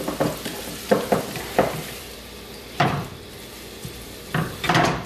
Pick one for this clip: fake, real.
fake